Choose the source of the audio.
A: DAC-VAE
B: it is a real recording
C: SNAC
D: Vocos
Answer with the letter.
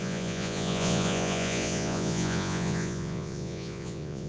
D